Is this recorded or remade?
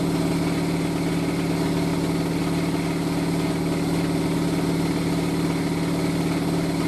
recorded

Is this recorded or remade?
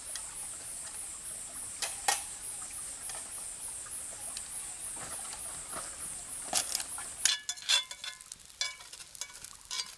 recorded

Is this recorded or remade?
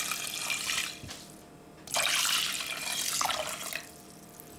recorded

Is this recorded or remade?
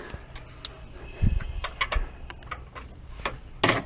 recorded